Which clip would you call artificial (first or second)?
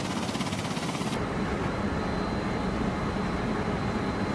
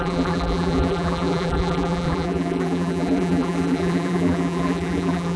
second